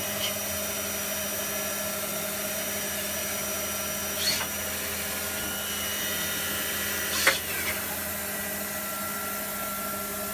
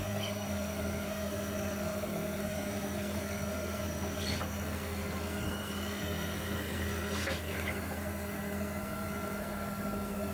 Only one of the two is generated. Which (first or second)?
second